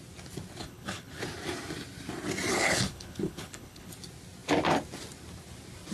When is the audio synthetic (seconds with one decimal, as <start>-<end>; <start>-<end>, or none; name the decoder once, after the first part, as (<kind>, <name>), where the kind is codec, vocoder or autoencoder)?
0.6-1.2 (codec, HILCodec); 2.5-3.9